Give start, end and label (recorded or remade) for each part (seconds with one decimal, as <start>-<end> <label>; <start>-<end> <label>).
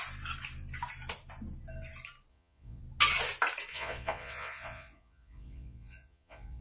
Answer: 0.0-2.3 recorded; 2.3-2.8 remade; 2.8-3.7 recorded; 3.7-6.6 remade